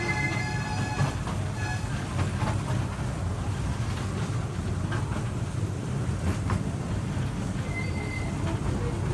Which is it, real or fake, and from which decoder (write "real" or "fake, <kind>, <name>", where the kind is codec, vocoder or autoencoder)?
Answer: real